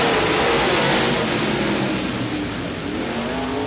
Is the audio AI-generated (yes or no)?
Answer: no